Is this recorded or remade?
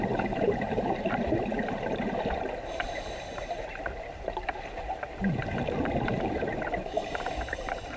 remade